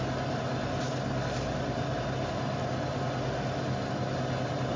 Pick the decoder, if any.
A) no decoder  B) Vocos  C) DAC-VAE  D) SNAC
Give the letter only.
A